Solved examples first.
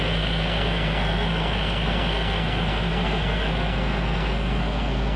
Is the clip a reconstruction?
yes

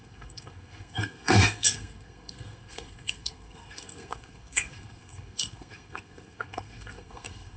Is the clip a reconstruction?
yes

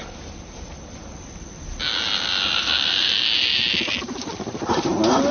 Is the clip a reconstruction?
no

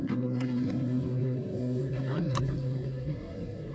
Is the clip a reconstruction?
yes